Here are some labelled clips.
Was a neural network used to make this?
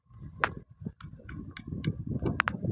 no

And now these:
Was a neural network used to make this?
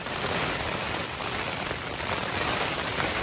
no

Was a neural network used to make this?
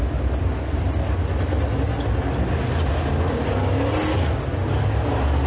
no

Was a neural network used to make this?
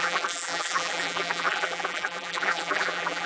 yes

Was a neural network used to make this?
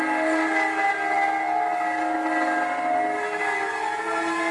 no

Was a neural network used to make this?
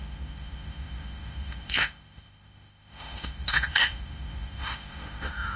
yes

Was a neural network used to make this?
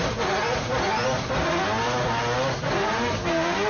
no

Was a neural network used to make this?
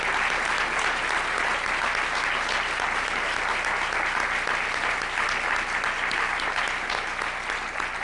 no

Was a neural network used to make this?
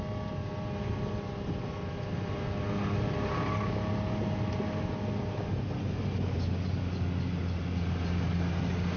no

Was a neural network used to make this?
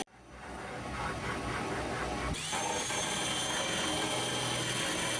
no